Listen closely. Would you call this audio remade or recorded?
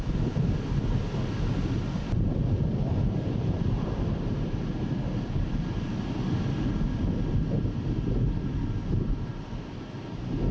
recorded